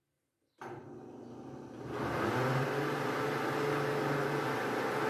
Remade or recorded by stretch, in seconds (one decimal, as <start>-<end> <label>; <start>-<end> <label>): 0.0-5.1 recorded